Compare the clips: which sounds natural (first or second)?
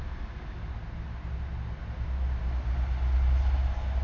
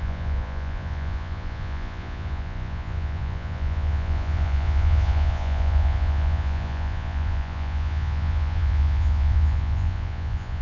first